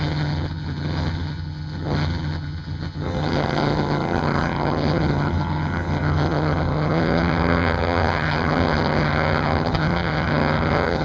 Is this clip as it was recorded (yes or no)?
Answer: no